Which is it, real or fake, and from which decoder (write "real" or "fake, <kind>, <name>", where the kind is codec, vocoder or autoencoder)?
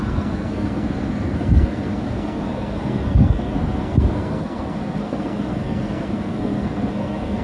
fake, codec, SNAC